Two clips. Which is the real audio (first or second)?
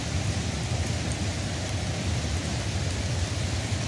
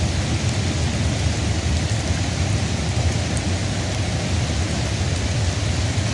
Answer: second